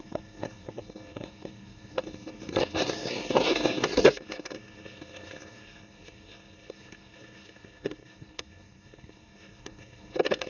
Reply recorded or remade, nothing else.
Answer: remade